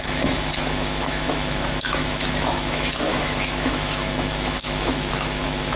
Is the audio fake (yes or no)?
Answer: yes